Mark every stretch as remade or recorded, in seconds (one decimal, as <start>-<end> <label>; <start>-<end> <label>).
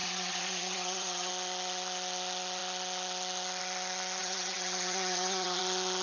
0.0-1.3 remade; 1.3-4.2 recorded; 4.2-5.6 remade; 5.6-6.0 recorded